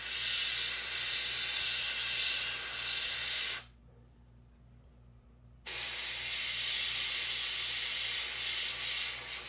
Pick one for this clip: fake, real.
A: real